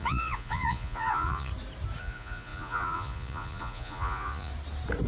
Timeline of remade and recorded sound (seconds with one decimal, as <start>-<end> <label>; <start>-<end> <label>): 0.0-1.5 remade; 1.5-2.0 recorded; 2.0-4.5 remade; 4.5-5.1 recorded

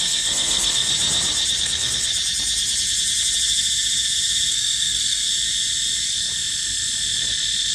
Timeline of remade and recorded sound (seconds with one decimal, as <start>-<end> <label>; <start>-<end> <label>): 0.0-0.9 remade; 0.9-1.6 recorded; 1.6-2.1 remade; 2.1-4.5 recorded; 4.5-5.3 remade; 5.3-7.7 recorded

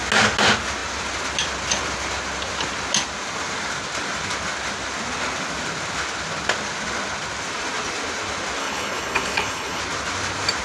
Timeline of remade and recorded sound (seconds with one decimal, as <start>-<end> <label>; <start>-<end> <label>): 0.0-8.6 recorded; 8.6-9.8 remade; 9.8-10.6 recorded

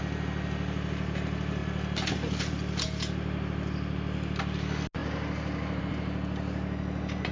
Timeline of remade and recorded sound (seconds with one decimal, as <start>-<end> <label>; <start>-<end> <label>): 0.0-7.3 recorded

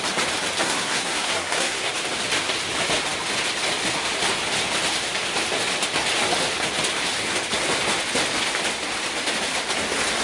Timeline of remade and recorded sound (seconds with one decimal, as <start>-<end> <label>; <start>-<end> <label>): 0.0-0.6 recorded; 0.6-1.9 remade; 1.9-10.2 recorded

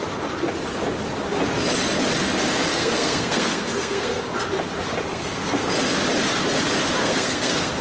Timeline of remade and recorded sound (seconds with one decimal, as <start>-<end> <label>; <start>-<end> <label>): 0.0-2.7 recorded; 2.7-4.2 remade; 4.2-5.1 recorded; 5.1-5.7 remade; 5.7-7.0 recorded; 7.0-7.8 remade

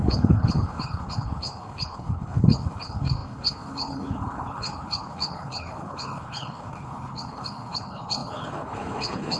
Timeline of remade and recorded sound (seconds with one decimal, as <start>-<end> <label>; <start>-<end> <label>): 0.0-9.4 remade